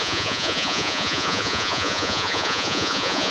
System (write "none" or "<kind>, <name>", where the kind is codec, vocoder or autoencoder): vocoder, Vocos